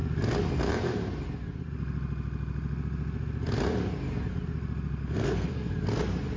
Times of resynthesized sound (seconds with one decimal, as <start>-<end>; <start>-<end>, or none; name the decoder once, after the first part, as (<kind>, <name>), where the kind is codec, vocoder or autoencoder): 5.0-5.7 (codec, SNAC)